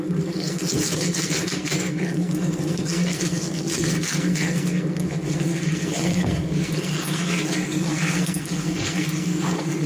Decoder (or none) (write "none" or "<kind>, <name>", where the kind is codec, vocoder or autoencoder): codec, SNAC